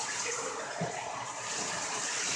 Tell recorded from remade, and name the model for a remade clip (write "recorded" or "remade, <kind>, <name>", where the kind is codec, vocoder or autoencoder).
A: recorded